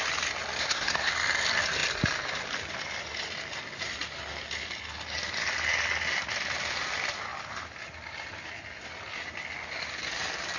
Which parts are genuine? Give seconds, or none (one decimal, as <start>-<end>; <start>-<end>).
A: 0.0-0.6; 1.1-10.6